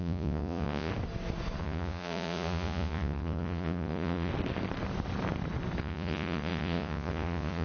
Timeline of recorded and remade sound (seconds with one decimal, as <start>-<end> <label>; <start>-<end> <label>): 0.0-0.9 remade; 0.9-1.6 recorded; 1.6-4.3 remade; 4.3-5.8 recorded; 5.8-7.6 remade